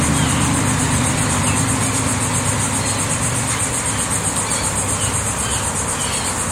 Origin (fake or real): real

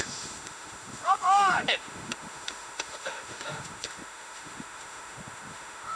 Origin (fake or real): fake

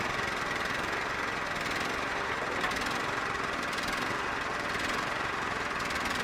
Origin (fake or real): real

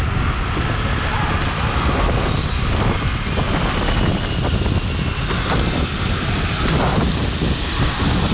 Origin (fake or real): real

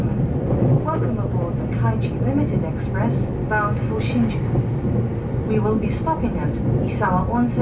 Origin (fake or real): real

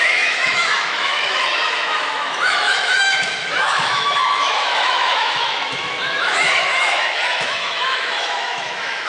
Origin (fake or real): fake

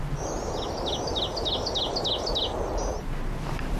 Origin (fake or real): real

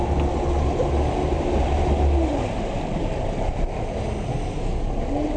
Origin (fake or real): real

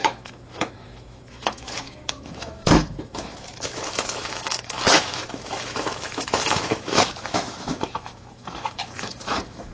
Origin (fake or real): fake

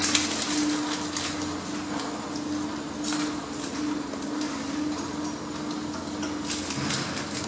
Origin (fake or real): real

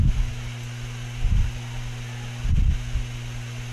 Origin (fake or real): real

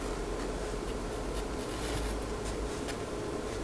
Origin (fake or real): real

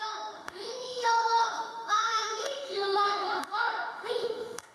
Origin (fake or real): fake